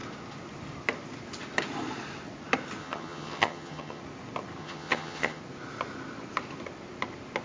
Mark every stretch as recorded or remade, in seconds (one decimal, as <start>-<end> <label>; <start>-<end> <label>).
0.0-2.8 recorded; 2.8-4.0 remade; 4.0-4.6 recorded; 4.6-5.4 remade; 5.4-7.4 recorded